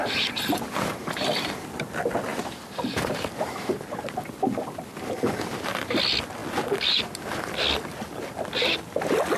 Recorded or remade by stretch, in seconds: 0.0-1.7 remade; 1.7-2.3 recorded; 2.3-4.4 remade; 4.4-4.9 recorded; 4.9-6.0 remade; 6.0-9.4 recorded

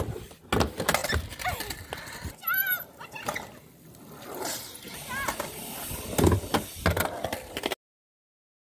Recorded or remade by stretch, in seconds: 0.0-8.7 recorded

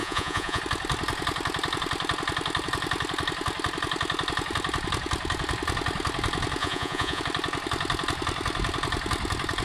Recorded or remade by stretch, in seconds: 0.0-0.6 remade; 0.6-6.6 recorded; 6.6-7.2 remade; 7.2-9.6 recorded

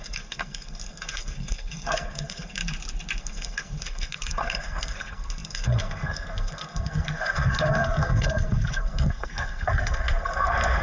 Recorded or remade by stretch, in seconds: 0.0-2.6 remade; 2.6-3.2 recorded; 3.2-10.8 remade

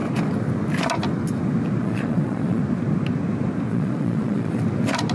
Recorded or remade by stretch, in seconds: 0.0-1.8 recorded; 1.8-2.6 remade; 2.6-3.7 recorded; 3.7-4.6 remade; 4.6-5.1 recorded